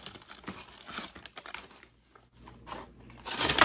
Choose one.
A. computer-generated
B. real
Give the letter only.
B